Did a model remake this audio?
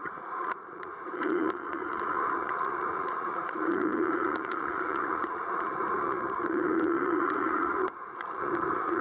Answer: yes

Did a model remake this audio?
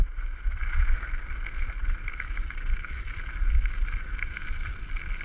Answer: no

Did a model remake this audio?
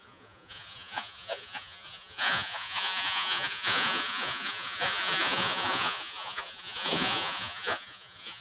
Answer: yes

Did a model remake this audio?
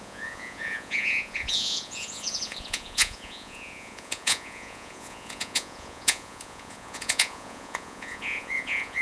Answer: yes